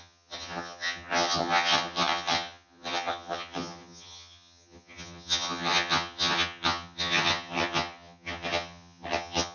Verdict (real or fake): fake